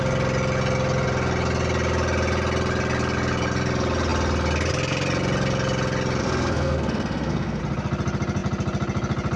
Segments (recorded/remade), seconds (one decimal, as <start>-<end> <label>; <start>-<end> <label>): 0.0-6.2 recorded; 6.2-7.6 remade; 7.6-9.4 recorded